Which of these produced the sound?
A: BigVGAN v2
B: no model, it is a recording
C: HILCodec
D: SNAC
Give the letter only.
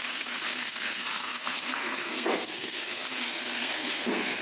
D